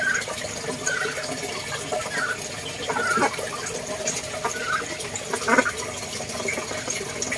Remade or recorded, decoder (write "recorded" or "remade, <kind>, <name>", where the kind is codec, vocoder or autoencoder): recorded